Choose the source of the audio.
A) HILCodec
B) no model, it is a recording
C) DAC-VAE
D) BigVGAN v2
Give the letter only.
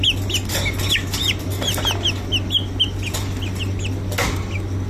B